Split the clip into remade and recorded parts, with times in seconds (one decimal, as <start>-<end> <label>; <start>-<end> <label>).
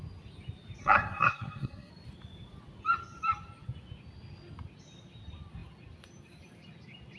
0.0-0.8 recorded; 0.8-1.9 remade; 1.9-7.2 recorded